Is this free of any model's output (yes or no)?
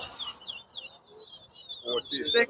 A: yes